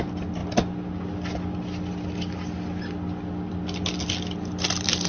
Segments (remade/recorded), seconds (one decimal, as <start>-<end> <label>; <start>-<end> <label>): 0.0-5.1 recorded